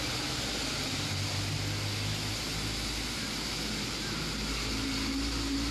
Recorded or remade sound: recorded